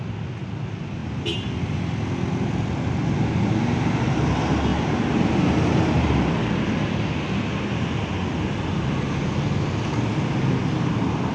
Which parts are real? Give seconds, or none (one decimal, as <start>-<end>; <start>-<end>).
0.0-4.7; 6.3-11.3